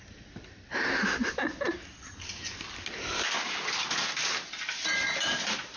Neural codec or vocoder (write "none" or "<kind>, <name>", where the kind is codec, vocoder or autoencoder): none